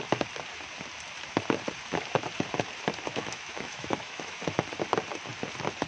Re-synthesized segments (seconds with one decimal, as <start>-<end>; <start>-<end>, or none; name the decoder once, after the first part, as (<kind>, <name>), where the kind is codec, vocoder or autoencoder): 3.1-4.6 (autoencoder, DAC-VAE)